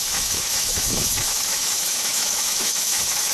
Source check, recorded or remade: remade